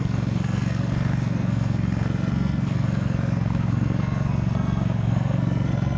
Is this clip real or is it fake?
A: fake